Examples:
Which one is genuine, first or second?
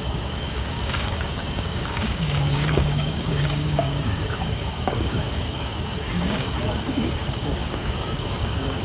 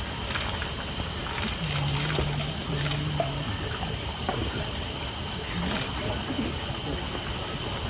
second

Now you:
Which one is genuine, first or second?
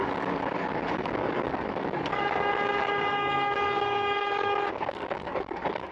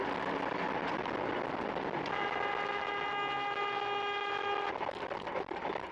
second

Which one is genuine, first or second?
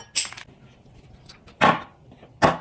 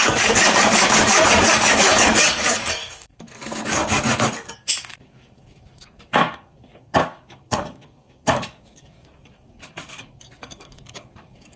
first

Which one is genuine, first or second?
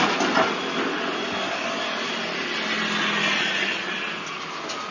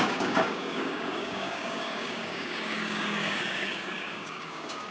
first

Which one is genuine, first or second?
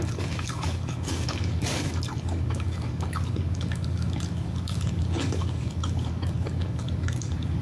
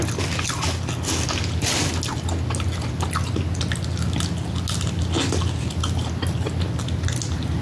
second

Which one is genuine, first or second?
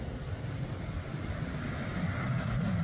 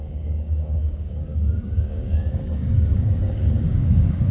first